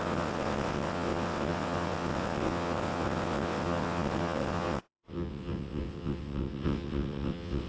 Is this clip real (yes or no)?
no